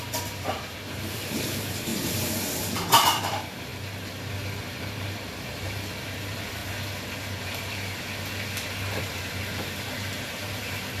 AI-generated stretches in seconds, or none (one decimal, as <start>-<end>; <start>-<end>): 0.0-3.7; 4.6-6.6; 9.0-11.0